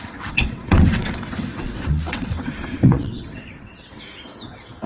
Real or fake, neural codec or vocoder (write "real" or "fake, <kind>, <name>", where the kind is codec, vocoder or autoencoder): fake, vocoder, WaveNeXt